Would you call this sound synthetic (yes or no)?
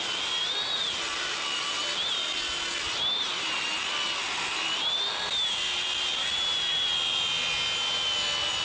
no